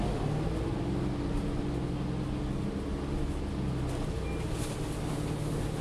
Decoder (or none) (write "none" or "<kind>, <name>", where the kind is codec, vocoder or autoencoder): none